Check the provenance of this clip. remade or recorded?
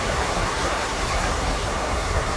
remade